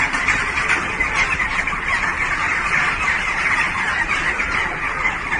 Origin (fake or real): real